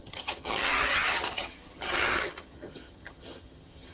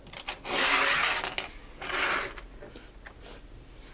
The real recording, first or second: second